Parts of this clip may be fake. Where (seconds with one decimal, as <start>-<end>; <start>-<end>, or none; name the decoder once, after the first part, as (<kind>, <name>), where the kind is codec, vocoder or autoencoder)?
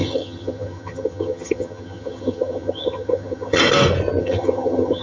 0.0-3.6 (vocoder, HiFi-GAN); 4.2-5.0